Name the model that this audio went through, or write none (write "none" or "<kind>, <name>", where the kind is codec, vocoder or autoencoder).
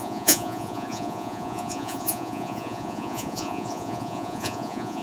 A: vocoder, Vocos